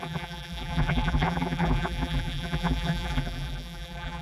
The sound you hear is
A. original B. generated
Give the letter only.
B